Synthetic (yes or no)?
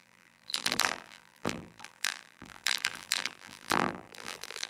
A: yes